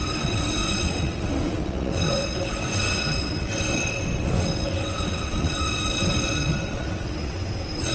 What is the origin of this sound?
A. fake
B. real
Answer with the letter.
A